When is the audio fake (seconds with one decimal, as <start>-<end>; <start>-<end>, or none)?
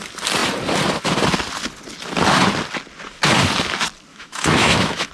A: 4.1-5.1